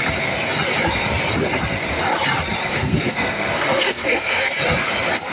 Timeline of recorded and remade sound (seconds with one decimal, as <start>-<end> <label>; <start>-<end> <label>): 0.0-2.6 recorded; 2.6-4.5 remade; 4.5-5.3 recorded

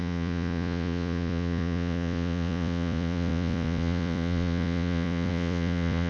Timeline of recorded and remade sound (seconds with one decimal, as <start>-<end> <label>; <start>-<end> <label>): 0.0-6.1 remade

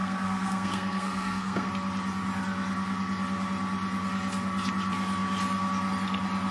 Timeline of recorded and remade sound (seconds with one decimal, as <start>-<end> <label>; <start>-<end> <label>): 0.0-1.7 remade; 1.7-6.5 recorded

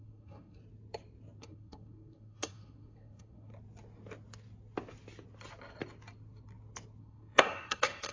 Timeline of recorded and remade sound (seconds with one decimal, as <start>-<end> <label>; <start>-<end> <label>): 0.0-0.6 remade; 0.6-1.4 recorded; 1.4-3.5 remade; 3.5-7.0 recorded; 7.0-8.1 remade

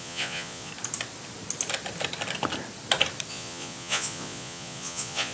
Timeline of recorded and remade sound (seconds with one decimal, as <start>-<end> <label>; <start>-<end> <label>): 0.0-0.7 remade; 0.7-3.3 recorded; 3.3-5.3 remade